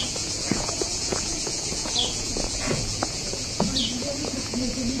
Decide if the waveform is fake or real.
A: fake